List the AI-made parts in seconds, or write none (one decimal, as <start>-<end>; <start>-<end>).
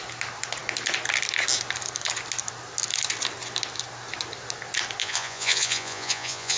5.0-6.6